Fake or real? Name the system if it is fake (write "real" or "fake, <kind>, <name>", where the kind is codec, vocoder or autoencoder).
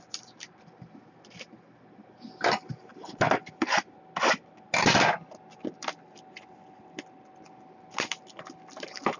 real